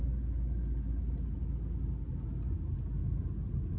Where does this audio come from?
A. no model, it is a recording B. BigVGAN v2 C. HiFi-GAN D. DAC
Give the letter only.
A